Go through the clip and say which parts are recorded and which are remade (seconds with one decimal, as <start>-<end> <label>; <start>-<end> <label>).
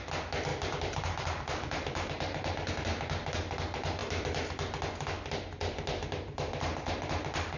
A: 0.0-0.5 recorded; 0.5-2.7 remade; 2.7-7.6 recorded